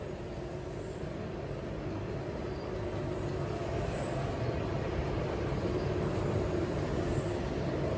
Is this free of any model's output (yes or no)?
yes